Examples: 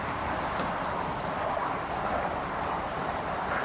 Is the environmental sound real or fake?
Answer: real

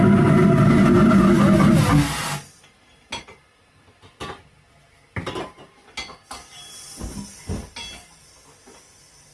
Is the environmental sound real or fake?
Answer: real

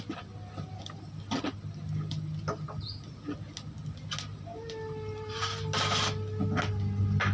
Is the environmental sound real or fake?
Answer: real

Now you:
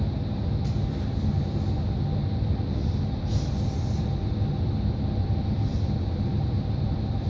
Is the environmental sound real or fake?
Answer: real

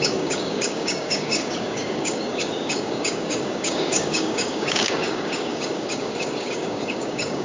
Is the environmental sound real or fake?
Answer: fake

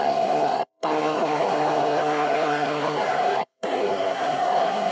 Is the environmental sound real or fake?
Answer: fake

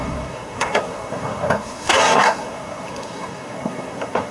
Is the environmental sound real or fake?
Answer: fake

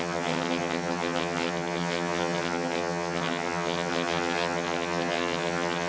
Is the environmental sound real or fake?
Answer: fake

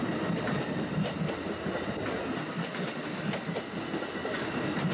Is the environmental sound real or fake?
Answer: real